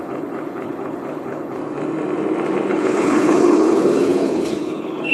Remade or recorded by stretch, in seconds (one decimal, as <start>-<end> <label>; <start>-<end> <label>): 0.0-1.6 remade; 1.6-2.7 recorded; 2.7-5.1 remade